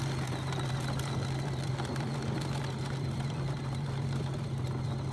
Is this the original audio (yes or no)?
no